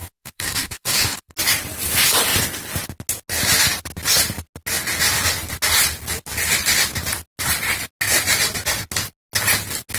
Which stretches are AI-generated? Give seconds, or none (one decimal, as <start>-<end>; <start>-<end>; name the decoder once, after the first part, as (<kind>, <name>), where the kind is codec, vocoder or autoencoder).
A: 0.0-1.3 (codec, DAC)